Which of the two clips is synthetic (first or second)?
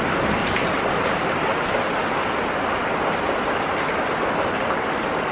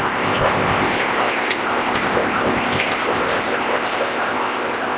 second